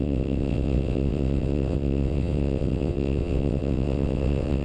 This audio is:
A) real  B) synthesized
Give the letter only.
B